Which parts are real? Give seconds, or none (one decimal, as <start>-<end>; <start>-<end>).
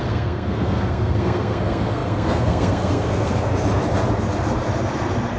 3.5-5.4